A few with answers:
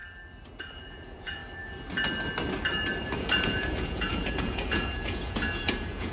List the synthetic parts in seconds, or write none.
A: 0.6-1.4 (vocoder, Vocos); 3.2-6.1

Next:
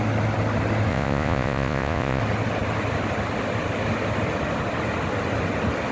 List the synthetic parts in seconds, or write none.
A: 0.9-2.2 (vocoder, Vocos)